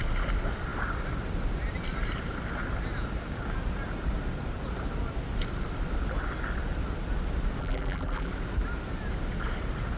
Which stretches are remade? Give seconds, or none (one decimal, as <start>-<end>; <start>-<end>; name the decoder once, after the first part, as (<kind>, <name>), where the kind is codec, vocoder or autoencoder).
7.6-8.3 (vocoder, BigVGAN v2)